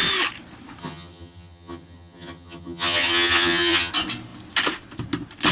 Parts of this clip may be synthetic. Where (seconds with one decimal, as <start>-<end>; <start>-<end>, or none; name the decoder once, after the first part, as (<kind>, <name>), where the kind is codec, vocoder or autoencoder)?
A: 0.8-3.9 (vocoder, HiFi-GAN)